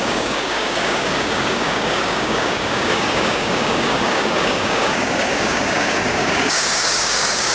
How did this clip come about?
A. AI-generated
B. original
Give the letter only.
A